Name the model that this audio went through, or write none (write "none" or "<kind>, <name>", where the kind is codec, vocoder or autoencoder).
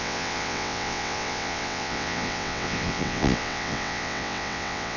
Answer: vocoder, WaveNeXt